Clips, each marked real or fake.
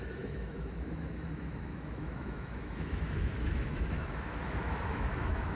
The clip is fake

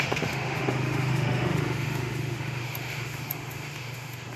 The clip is fake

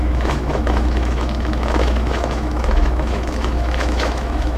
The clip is fake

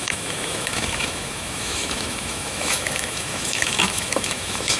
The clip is fake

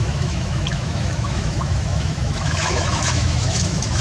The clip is fake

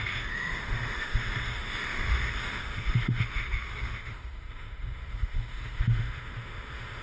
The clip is fake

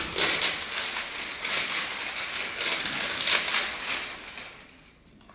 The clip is real